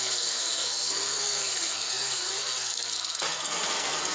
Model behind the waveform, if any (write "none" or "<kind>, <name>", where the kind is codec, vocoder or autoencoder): codec, SNAC